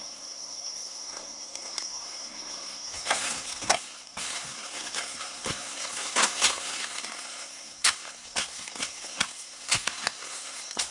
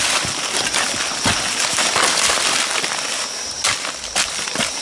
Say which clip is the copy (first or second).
first